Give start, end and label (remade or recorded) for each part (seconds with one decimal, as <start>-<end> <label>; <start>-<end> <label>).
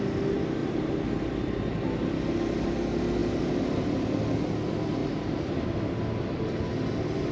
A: 0.0-0.6 recorded; 0.6-1.6 remade; 1.6-5.0 recorded; 5.0-5.7 remade; 5.7-7.3 recorded